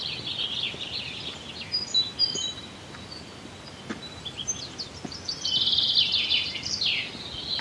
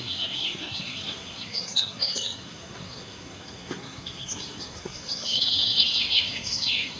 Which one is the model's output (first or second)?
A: second